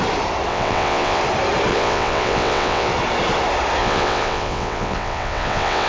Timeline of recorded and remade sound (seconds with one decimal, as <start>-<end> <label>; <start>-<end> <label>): 0.0-0.5 recorded; 0.5-1.2 remade; 1.2-1.7 recorded; 1.7-2.9 remade; 2.9-3.8 recorded; 3.8-5.9 remade